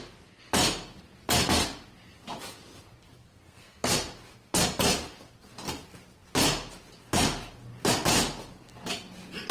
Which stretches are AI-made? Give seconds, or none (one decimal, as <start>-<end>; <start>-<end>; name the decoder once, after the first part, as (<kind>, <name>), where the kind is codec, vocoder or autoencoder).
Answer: 3.2-3.9 (codec, SNAC)